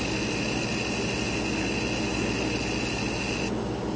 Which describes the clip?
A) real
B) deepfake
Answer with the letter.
A